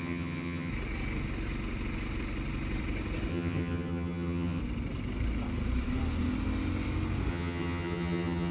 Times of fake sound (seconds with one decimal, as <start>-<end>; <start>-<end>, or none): 0.0-0.7; 3.3-4.6; 7.3-8.5